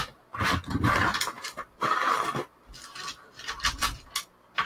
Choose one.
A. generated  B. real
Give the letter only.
B